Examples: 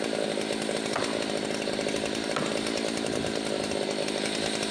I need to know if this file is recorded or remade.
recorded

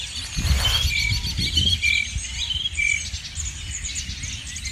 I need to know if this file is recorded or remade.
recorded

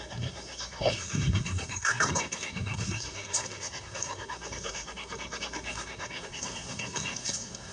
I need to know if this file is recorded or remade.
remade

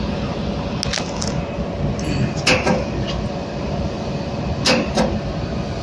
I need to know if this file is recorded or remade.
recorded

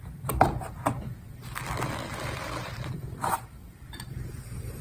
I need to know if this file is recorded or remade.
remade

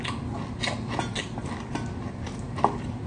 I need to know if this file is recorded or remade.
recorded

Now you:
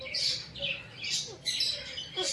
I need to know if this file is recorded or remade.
recorded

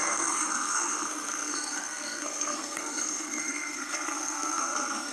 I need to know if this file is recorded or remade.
remade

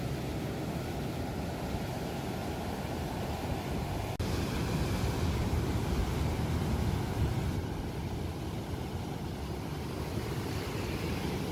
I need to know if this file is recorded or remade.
recorded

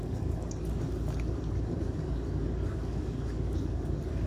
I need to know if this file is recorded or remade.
remade